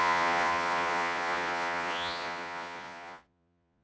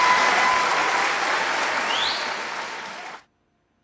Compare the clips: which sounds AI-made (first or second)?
first